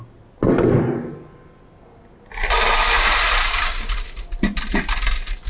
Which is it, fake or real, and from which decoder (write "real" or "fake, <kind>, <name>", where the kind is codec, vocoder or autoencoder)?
real